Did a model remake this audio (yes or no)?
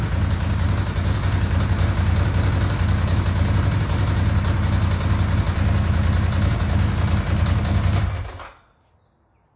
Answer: no